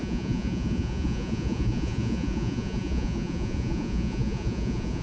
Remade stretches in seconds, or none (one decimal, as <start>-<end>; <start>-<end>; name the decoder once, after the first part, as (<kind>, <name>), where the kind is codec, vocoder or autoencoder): 0.0-5.0 (vocoder, Vocos)

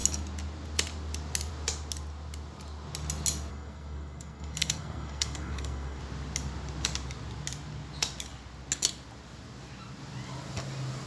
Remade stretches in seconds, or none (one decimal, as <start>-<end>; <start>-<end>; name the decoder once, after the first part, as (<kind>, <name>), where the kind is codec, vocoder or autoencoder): 3.5-6.0 (codec, SNAC)

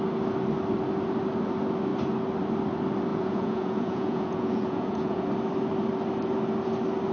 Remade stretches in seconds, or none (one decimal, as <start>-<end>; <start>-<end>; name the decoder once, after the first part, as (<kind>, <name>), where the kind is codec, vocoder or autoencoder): 3.1-5.3 (vocoder, Vocos)

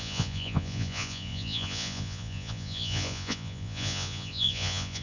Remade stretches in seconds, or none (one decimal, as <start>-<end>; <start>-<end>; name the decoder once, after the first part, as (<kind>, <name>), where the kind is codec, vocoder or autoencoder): 0.0-5.0 (vocoder, Vocos)

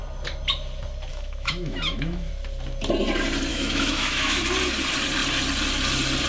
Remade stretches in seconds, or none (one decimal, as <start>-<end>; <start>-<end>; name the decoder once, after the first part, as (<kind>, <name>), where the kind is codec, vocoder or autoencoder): 1.1-2.3 (autoencoder, DAC-VAE); 3.5-4.4

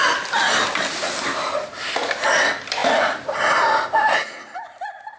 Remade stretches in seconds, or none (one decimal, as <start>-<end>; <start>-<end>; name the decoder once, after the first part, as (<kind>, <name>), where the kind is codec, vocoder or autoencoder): none

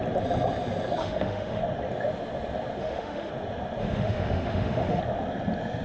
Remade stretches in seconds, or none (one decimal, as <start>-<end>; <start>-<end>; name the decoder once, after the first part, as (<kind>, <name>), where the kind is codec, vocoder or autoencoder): 1.0-1.6 (autoencoder, DAC-VAE); 2.8-3.3; 3.8-5.0